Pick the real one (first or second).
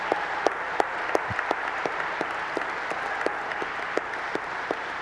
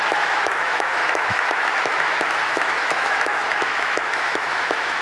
first